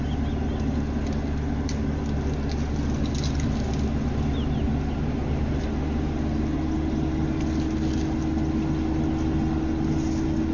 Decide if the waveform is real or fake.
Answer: real